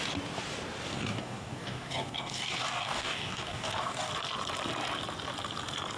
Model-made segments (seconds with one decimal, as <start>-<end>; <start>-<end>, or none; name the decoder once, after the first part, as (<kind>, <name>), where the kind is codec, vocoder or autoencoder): 0.9-4.1 (codec, DAC)